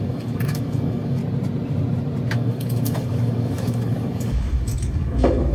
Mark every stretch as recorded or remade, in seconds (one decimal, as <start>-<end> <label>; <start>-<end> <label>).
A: 0.0-1.2 remade; 1.2-2.3 recorded; 2.3-5.5 remade

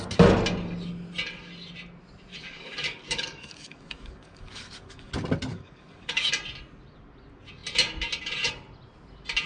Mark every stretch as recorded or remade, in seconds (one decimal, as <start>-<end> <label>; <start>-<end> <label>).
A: 0.0-2.3 recorded; 2.3-5.1 remade; 5.1-5.5 recorded; 5.5-6.3 remade; 6.3-9.5 recorded